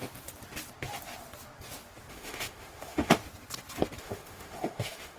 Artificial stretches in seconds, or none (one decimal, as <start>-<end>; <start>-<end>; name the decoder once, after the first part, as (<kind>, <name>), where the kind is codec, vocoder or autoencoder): 2.1-3.2 (autoencoder, DAC-VAE); 4.0-5.2